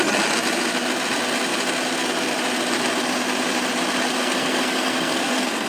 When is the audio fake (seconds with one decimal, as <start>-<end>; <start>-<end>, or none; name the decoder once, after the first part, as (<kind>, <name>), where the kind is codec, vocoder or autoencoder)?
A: 4.2-5.7 (codec, SNAC)